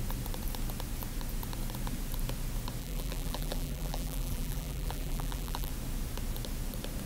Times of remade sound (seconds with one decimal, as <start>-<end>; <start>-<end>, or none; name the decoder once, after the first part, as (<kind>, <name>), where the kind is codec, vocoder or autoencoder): 2.8-5.7 (vocoder, BigVGAN v2)